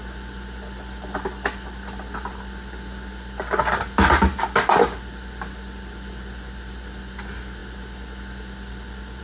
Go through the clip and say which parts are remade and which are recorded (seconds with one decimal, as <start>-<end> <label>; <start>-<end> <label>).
0.0-9.2 recorded